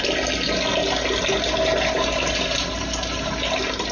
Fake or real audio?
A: real